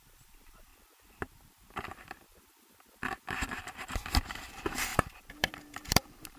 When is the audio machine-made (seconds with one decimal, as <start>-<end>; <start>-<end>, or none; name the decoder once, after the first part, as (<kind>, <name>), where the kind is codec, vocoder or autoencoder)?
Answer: 0.0-0.7 (vocoder, BigVGAN v2); 4.5-6.4